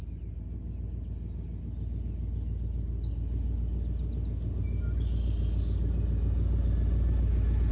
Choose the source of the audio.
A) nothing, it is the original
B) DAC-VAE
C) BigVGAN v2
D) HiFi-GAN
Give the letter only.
A